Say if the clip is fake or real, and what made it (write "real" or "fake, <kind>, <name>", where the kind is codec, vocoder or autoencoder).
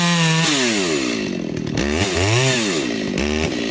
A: real